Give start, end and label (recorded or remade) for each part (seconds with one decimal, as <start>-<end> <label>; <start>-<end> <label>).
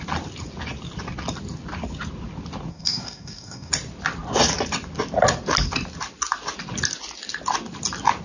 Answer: 0.0-2.7 recorded; 2.7-3.7 remade; 3.7-8.2 recorded